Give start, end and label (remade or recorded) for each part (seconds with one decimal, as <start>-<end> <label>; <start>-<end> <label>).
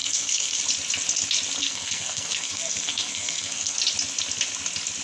0.0-0.6 remade; 0.6-1.6 recorded; 1.6-3.8 remade; 3.8-5.0 recorded